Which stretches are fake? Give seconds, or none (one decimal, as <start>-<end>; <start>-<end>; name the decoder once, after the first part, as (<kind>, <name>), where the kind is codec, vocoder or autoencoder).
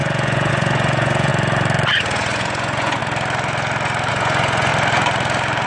0.0-1.3 (vocoder, Vocos); 1.9-3.0; 4.1-4.7